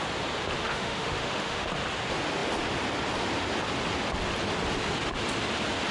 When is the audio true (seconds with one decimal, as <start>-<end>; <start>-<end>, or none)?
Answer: 0.0-0.6; 1.7-5.9